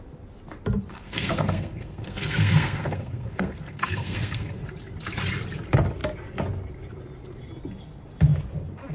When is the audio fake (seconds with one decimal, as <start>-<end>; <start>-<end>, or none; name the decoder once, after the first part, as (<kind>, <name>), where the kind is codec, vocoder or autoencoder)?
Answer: 0.9-4.6 (codec, SNAC)